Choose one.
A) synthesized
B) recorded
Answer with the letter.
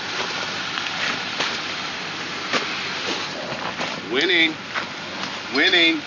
B